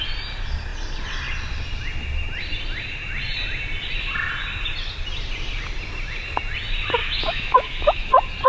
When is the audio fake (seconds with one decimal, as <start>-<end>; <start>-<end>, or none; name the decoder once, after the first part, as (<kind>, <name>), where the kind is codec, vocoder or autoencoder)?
7.0-8.1 (autoencoder, DAC-VAE)